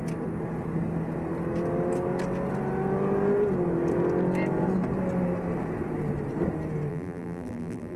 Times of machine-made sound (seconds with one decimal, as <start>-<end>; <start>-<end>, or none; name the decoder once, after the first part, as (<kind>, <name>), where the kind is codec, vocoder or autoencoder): 6.9-8.0 (vocoder, BigVGAN v2)

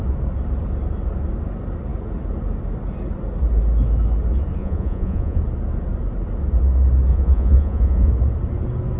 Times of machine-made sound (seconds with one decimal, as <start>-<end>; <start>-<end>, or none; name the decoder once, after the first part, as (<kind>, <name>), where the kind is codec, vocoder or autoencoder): 4.6-5.4 (vocoder, Vocos); 7.1-8.1

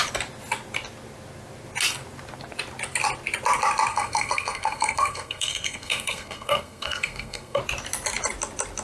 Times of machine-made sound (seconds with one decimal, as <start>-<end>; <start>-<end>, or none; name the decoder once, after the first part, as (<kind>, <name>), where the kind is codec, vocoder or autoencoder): 3.9-7.6 (codec, SNAC)

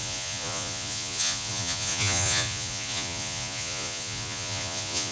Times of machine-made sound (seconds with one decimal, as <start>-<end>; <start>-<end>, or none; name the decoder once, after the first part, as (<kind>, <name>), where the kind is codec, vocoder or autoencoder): 0.0-5.1 (vocoder, Vocos)

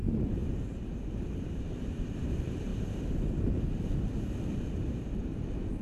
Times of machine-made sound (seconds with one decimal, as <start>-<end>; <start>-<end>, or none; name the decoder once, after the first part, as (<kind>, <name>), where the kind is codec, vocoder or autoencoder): 0.0-2.7 (vocoder, BigVGAN v2); 5.2-5.8

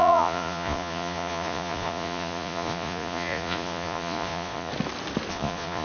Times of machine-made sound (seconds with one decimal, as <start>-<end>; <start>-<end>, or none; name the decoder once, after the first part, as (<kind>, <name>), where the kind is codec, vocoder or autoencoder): 0.0-4.7 (vocoder, Vocos); 5.3-5.8

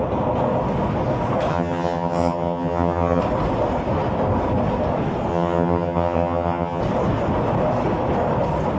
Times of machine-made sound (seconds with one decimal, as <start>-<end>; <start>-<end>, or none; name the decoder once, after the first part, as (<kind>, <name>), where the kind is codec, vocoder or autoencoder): 1.5-3.2 (vocoder, HiFi-GAN); 5.3-6.8